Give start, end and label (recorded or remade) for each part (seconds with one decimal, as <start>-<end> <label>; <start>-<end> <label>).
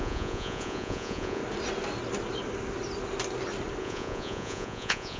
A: 0.0-1.4 remade; 1.4-3.8 recorded; 3.8-5.2 remade